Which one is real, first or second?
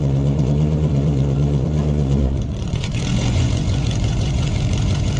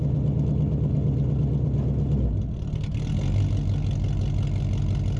second